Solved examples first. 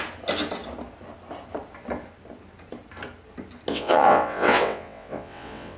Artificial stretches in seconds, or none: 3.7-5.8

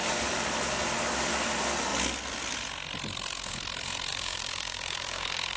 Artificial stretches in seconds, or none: 4.1-5.6